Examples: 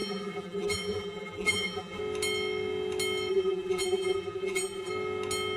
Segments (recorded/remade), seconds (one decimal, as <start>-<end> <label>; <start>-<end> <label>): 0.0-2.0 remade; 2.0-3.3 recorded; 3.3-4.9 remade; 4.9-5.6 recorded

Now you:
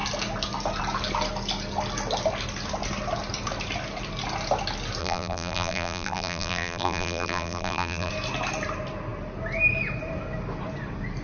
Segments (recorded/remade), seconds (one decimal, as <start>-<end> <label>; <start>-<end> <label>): 0.0-5.0 recorded; 5.0-8.1 remade; 8.1-11.2 recorded

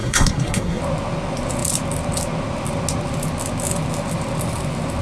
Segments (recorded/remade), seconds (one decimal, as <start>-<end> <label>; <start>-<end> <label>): 0.0-0.8 remade; 0.8-5.0 recorded

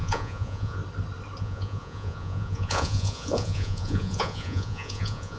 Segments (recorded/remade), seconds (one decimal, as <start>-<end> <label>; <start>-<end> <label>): 0.0-0.8 remade; 0.8-1.4 recorded; 1.4-5.4 remade

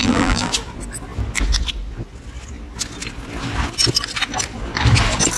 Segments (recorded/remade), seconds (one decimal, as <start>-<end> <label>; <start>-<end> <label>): 0.0-0.5 remade; 0.5-5.4 recorded

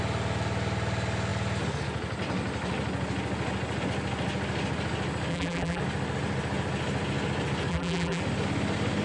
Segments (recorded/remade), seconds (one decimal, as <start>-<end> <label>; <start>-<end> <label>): 0.0-5.3 recorded; 5.3-5.8 remade; 5.8-7.7 recorded; 7.7-8.2 remade; 8.2-9.0 recorded

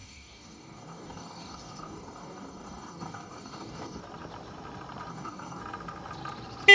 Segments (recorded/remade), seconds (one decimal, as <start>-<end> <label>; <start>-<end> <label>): 0.0-4.0 remade; 4.0-5.1 recorded; 5.1-5.6 remade; 5.6-6.7 recorded

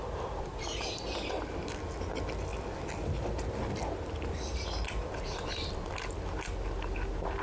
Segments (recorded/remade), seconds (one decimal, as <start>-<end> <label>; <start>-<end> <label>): 0.0-7.4 recorded